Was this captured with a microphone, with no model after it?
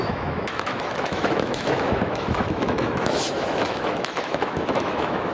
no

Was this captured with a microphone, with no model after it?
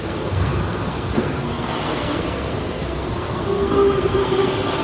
no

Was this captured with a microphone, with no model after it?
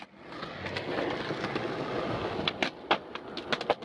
yes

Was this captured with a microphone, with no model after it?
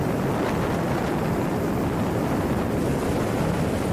yes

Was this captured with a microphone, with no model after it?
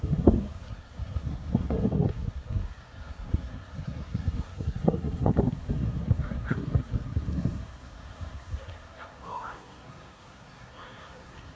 no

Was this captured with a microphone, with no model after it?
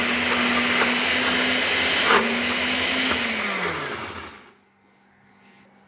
yes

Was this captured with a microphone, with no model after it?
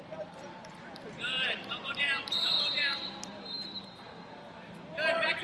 no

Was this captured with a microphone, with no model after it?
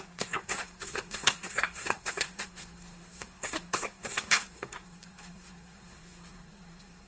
no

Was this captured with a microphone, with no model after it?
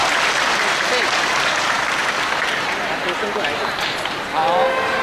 yes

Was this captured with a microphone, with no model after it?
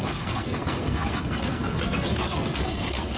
no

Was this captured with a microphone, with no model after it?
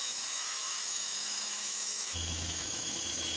no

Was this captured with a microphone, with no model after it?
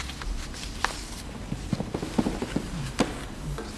yes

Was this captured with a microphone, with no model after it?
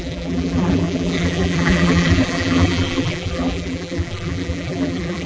no